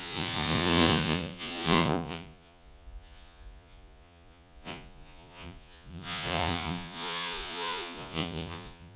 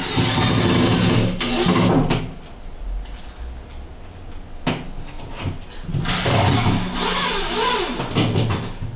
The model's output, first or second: first